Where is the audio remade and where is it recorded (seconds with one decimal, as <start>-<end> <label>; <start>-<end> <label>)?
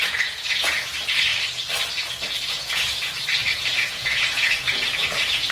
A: 0.0-1.3 remade; 1.3-2.5 recorded; 2.5-5.5 remade